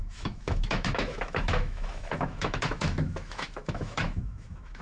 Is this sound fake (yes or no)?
yes